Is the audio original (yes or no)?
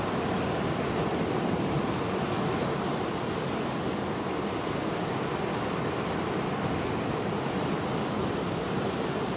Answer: yes